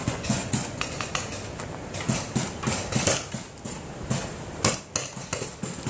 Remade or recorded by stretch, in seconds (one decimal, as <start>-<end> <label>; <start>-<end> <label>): 0.0-1.1 remade; 1.1-5.9 recorded